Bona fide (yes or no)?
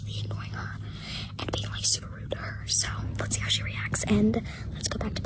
yes